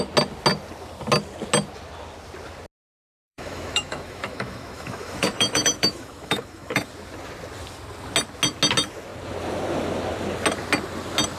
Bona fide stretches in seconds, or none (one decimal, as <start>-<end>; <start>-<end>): 0.0-3.2; 6.9-11.4